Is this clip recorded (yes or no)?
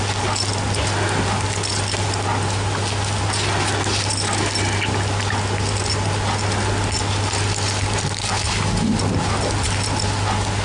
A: yes